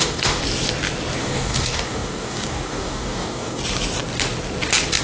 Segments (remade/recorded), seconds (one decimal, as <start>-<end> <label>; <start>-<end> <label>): 0.0-0.4 remade; 0.4-1.2 recorded; 1.2-3.6 remade; 3.6-5.0 recorded